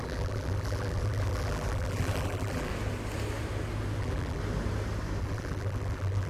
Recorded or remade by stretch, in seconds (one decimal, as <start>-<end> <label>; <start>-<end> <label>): 0.0-2.7 remade; 2.7-4.0 recorded; 4.0-4.4 remade; 4.4-5.2 recorded; 5.2-6.3 remade